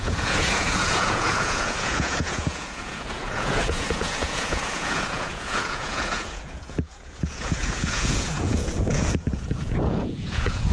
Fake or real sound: fake